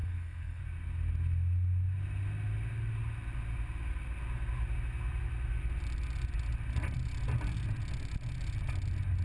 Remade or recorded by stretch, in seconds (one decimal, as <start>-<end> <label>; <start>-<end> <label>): 0.0-0.6 remade; 0.6-9.2 recorded